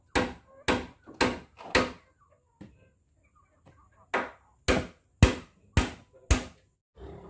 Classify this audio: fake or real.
real